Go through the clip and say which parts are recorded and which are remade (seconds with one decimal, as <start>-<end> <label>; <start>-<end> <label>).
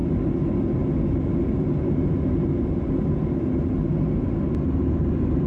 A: 0.0-5.5 recorded